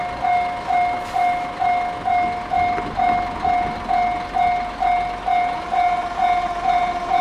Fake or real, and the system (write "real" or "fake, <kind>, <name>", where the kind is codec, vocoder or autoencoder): real